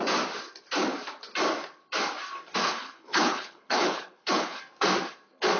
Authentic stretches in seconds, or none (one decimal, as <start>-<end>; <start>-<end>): 0.0-2.6; 4.6-5.6

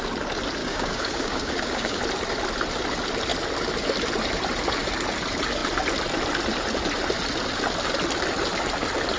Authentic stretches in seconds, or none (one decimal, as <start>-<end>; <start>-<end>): 0.0-0.6; 2.0-9.2